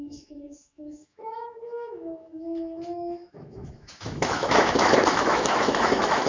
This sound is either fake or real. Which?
fake